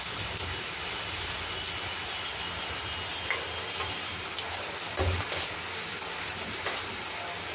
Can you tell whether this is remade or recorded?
recorded